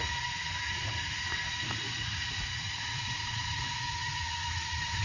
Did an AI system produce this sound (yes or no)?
yes